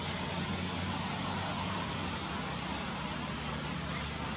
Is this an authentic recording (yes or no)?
yes